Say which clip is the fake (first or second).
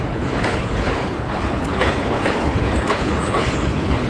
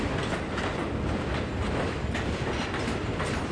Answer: first